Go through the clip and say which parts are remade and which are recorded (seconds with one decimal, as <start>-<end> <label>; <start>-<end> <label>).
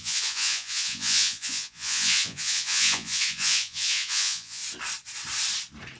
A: 0.0-4.6 remade; 4.6-6.0 recorded